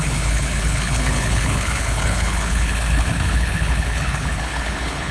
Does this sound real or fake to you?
fake